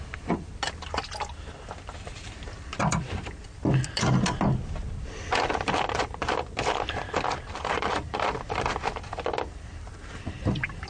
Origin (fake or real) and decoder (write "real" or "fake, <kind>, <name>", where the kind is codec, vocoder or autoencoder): real